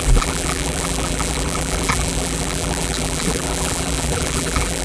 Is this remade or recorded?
remade